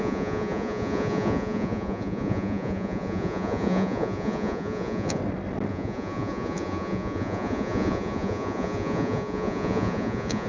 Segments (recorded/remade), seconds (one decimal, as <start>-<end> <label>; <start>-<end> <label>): 0.0-5.2 remade; 5.2-5.7 recorded; 5.7-10.5 remade